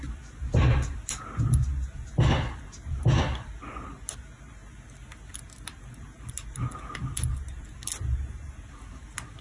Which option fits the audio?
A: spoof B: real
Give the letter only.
B